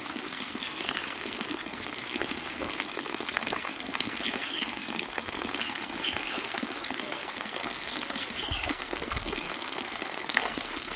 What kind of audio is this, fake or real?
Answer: fake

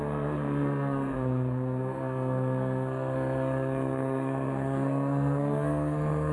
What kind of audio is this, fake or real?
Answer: fake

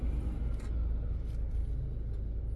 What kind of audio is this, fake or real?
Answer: real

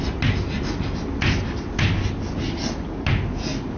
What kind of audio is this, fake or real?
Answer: real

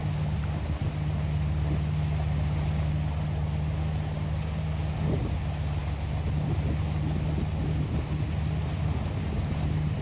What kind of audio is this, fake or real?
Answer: real